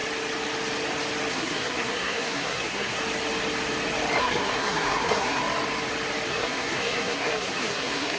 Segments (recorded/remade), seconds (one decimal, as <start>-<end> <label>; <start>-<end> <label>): 0.0-1.3 recorded; 1.3-3.0 remade; 3.0-4.2 recorded; 4.2-5.4 remade; 5.4-6.3 recorded; 6.3-8.2 remade

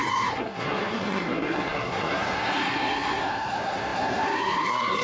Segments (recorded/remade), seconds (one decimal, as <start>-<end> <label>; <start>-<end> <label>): 0.0-5.0 remade